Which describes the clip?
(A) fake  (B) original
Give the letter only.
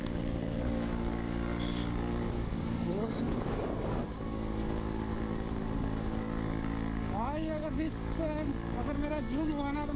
A